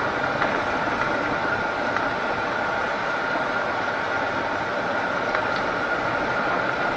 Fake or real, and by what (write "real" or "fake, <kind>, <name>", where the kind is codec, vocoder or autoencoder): real